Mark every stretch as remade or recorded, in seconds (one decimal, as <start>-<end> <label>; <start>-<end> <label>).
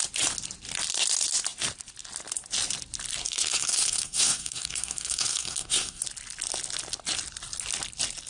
0.0-3.2 recorded; 3.2-6.0 remade; 6.0-8.3 recorded